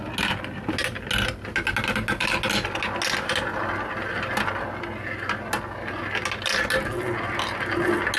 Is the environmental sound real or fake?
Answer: real